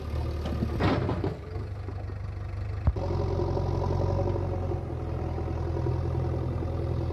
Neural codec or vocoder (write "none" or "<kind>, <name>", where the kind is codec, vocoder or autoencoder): none